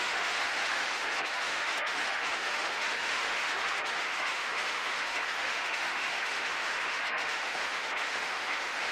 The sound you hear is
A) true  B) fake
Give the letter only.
B